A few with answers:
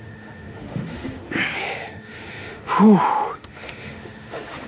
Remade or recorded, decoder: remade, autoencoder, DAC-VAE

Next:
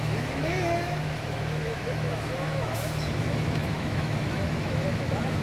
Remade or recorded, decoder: remade, autoencoder, DAC-VAE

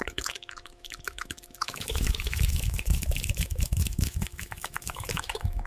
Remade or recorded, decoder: remade, autoencoder, DAC-VAE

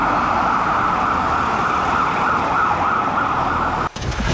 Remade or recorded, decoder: recorded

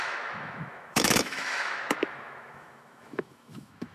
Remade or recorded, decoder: remade, autoencoder, DAC-VAE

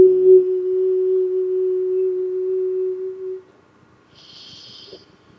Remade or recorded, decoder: recorded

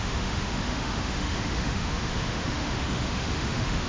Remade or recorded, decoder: remade, autoencoder, DAC-VAE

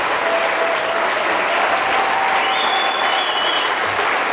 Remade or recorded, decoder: recorded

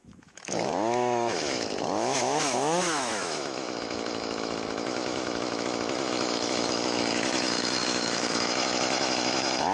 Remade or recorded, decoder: remade, autoencoder, DAC-VAE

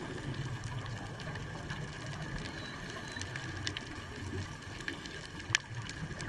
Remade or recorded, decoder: recorded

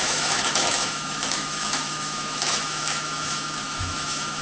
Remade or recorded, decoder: remade, autoencoder, DAC-VAE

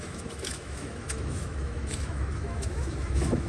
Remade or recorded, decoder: remade, autoencoder, DAC-VAE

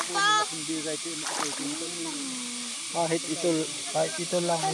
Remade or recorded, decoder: recorded